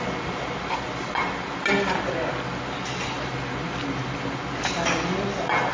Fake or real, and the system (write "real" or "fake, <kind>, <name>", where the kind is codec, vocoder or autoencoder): real